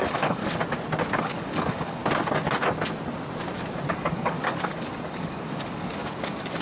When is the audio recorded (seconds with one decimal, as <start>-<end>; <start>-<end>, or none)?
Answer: 0.4-1.2; 2.0-3.9